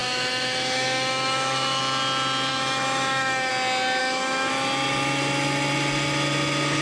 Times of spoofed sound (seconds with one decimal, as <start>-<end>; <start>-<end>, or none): 0.0-1.8; 2.5-3.5; 4.0-4.5